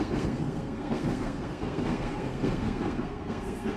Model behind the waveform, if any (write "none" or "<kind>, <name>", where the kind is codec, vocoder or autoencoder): codec, SNAC